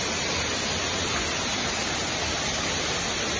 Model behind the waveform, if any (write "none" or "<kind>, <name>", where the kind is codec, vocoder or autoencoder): none